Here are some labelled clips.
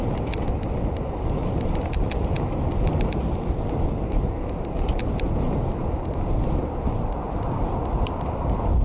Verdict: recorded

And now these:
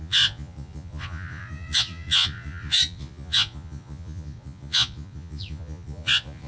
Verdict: remade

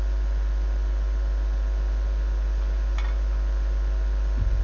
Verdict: recorded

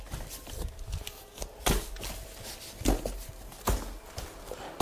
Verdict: recorded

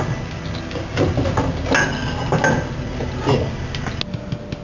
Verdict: recorded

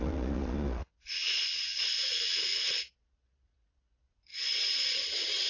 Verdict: remade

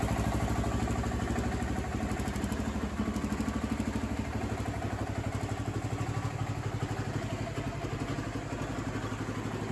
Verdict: recorded